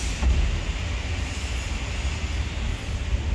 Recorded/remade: recorded